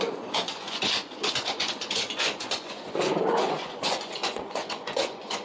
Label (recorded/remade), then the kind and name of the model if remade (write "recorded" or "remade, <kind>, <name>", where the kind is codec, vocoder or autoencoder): remade, vocoder, Vocos